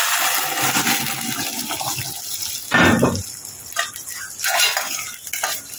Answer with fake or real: real